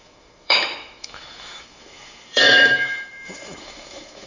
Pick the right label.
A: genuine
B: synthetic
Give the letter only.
B